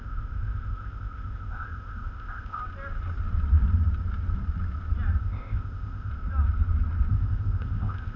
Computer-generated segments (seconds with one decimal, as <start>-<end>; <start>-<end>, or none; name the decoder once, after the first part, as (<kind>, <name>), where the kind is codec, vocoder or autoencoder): 0.0-2.6 (codec, ZipCodec); 5.2-6.1; 7.1-8.2